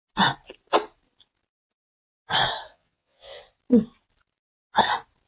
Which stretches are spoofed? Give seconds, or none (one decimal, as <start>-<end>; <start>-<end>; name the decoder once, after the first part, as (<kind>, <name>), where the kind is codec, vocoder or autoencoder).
2.7-3.4 (vocoder, Vocos)